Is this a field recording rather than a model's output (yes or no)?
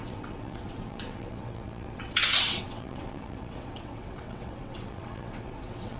no